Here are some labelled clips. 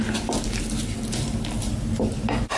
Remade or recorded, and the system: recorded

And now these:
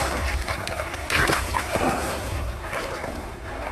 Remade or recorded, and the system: remade, codec, SNAC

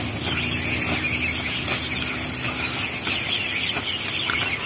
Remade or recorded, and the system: recorded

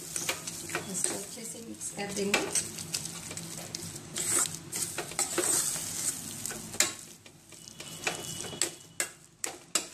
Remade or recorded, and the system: recorded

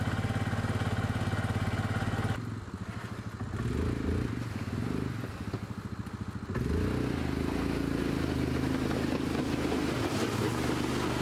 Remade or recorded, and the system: recorded